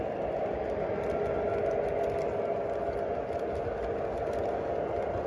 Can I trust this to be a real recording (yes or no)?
yes